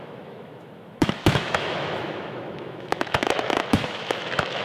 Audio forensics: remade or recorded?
remade